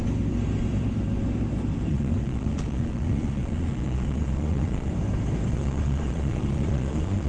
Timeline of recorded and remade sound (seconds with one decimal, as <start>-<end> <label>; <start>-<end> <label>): 0.0-1.9 recorded; 1.9-4.9 remade; 4.9-5.5 recorded; 5.5-7.3 remade